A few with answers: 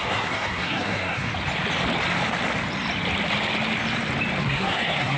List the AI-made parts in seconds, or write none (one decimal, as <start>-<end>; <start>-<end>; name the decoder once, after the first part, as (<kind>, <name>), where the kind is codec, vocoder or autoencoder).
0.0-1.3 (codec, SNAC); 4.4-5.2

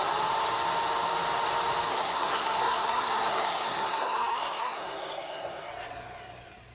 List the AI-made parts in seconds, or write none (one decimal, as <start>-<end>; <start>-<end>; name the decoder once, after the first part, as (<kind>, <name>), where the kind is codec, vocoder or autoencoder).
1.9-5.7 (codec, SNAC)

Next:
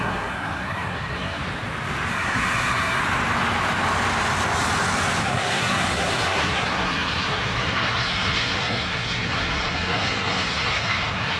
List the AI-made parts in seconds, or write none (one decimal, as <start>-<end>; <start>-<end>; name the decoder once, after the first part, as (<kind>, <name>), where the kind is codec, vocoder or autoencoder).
0.0-1.4 (codec, SNAC); 2.1-3.0; 5.2-11.4